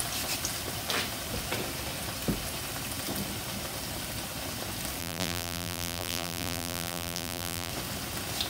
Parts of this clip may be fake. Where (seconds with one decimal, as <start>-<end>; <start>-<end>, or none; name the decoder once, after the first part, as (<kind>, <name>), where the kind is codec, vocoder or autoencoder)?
5.0-7.7 (vocoder, BigVGAN v2)